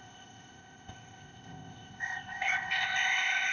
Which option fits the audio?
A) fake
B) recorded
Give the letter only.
A